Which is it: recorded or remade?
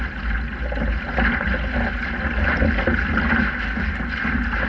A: recorded